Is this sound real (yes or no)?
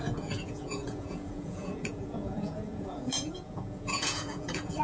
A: no